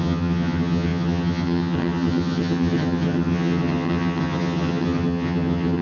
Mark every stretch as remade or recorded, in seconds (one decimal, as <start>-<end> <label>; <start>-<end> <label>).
0.0-5.8 remade

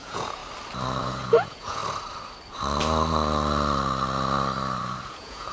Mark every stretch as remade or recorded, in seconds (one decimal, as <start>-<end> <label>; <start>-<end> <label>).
0.0-0.4 remade; 0.4-1.0 recorded; 1.0-1.8 remade; 1.8-5.1 recorded; 5.1-5.5 remade

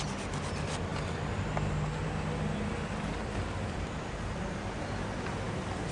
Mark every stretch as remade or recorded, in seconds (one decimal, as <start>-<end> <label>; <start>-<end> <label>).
0.0-5.9 recorded

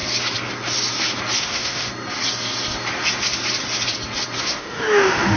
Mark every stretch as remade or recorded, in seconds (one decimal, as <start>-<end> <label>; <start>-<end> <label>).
0.0-1.4 recorded; 1.4-1.9 remade; 1.9-4.4 recorded; 4.4-5.4 remade

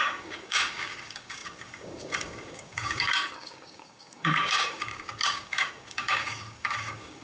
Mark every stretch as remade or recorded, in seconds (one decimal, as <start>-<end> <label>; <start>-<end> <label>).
0.0-7.2 remade